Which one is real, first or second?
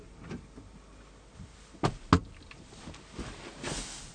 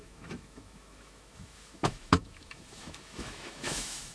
first